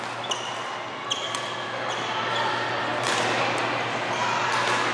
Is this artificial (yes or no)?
no